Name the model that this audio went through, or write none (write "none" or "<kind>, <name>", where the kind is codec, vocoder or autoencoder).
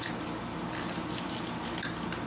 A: none